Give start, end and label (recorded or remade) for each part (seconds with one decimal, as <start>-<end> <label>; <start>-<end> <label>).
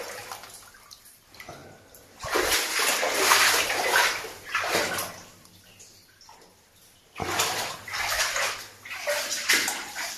0.0-10.2 recorded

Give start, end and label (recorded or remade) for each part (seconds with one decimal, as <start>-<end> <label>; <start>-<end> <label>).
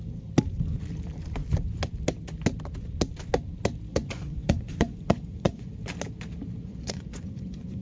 0.0-3.9 recorded; 3.9-5.7 remade; 5.7-6.6 recorded; 6.6-7.8 remade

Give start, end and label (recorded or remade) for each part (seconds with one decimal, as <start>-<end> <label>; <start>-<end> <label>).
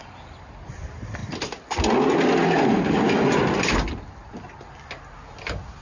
0.0-5.8 recorded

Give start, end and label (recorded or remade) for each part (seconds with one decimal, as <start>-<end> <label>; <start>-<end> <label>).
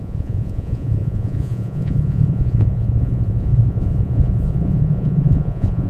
0.0-5.9 remade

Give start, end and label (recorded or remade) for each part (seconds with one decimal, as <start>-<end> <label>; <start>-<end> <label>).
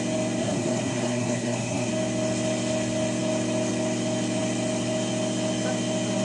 0.0-0.4 recorded; 0.4-1.9 remade; 1.9-6.2 recorded